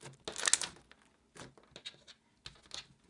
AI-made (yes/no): no